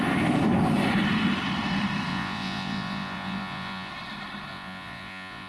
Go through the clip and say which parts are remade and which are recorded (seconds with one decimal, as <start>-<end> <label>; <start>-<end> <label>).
0.0-2.1 recorded; 2.1-3.9 remade; 3.9-4.5 recorded; 4.5-5.5 remade